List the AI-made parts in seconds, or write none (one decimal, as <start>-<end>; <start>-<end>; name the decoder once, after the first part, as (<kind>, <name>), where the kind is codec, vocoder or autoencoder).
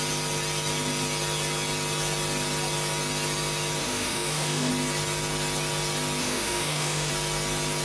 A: 3.8-4.7 (autoencoder, DAC-VAE); 6.2-7.1